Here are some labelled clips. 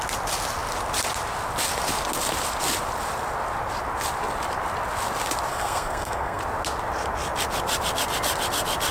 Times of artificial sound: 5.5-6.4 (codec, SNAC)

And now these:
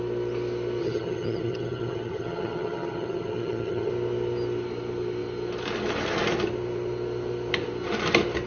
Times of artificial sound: 0.8-3.9 (vocoder, HiFi-GAN)

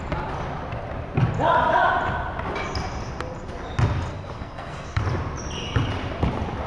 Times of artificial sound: 4.1-5.0 (codec, SNAC)

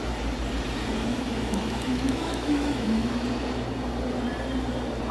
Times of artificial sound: 1.1-3.1 (autoencoder, DAC-VAE)

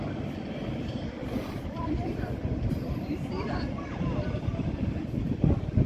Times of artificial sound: 1.2-4.7 (vocoder, BigVGAN v2)